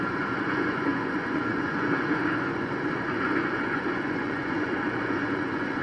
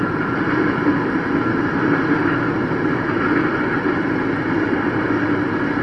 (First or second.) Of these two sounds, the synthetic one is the first